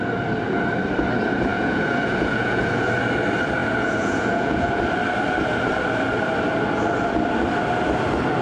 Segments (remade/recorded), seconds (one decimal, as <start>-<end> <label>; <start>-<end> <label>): 0.0-1.5 recorded; 1.5-2.9 remade; 2.9-3.6 recorded; 3.6-4.8 remade; 4.8-8.4 recorded